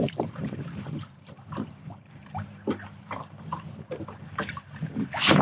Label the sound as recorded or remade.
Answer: remade